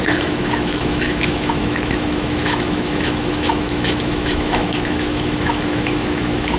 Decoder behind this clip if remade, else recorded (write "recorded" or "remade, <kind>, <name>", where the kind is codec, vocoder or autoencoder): remade, autoencoder, DAC-VAE